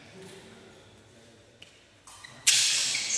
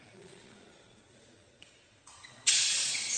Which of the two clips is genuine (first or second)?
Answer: first